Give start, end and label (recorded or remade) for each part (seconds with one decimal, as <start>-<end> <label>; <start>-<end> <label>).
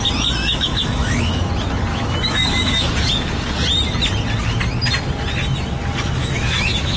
0.0-0.4 recorded; 0.4-1.5 remade; 1.5-1.9 recorded; 1.9-2.9 remade; 2.9-6.2 recorded; 6.2-7.0 remade